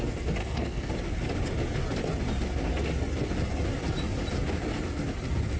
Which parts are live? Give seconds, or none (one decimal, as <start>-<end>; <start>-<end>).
0.0-0.4; 0.9-5.6